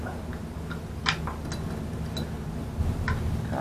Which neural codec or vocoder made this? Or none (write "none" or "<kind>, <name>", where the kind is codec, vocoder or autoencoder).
none